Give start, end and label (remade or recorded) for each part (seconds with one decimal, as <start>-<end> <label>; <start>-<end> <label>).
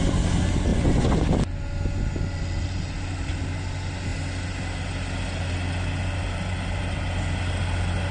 0.0-0.7 recorded; 0.7-1.3 remade; 1.3-8.1 recorded